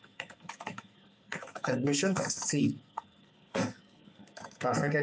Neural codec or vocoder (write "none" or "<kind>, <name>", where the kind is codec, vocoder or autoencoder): codec, SNAC